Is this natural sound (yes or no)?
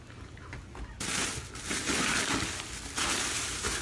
yes